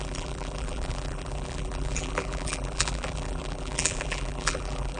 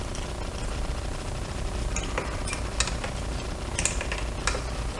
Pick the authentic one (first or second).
second